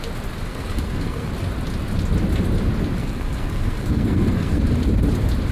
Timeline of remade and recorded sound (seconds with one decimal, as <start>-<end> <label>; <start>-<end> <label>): 0.0-0.5 recorded; 0.5-1.3 remade; 1.3-3.0 recorded; 3.0-4.6 remade; 4.6-5.5 recorded